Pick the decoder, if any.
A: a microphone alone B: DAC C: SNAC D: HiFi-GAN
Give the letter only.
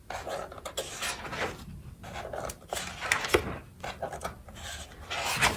A